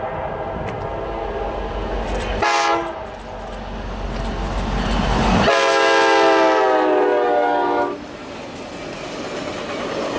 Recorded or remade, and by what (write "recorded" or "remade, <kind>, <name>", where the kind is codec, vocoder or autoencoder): recorded